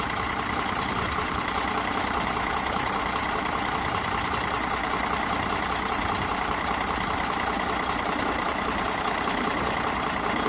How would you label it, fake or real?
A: fake